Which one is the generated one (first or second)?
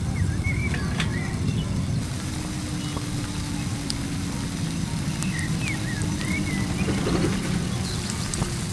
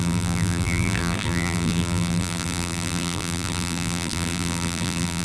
second